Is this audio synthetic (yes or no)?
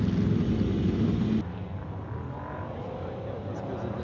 no